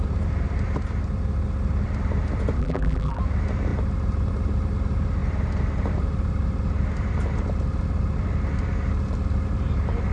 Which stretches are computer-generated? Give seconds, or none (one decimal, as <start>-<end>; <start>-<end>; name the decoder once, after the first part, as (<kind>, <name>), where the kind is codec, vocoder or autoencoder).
2.6-3.2 (vocoder, BigVGAN v2)